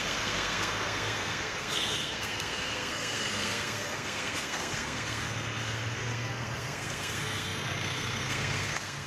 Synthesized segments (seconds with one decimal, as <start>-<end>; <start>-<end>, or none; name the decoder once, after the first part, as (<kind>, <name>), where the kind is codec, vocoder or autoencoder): 0.0-9.1 (codec, SNAC)